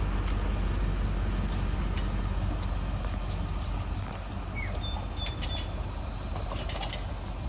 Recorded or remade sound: recorded